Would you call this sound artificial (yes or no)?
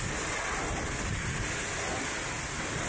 no